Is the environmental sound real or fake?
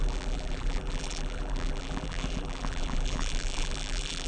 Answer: fake